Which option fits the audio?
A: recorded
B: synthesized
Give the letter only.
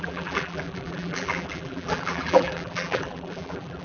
B